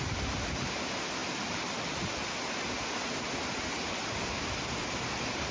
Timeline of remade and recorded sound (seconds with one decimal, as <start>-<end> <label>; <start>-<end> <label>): 0.0-5.5 recorded